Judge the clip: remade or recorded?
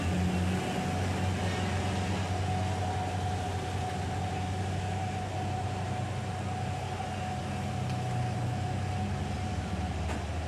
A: recorded